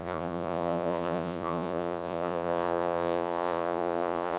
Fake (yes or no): yes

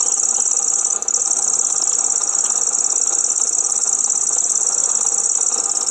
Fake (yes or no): no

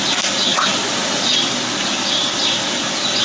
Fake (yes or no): no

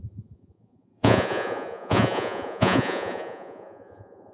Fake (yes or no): yes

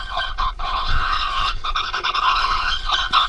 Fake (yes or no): yes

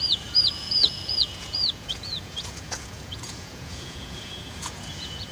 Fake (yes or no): yes